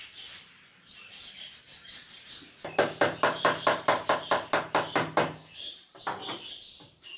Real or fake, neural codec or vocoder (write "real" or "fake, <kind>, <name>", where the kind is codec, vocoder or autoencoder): fake, vocoder, BigVGAN v2